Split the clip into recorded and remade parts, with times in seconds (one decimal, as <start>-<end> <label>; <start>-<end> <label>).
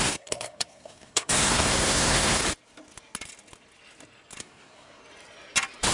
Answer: 0.0-2.4 remade; 2.4-4.4 recorded; 4.4-5.0 remade; 5.0-5.9 recorded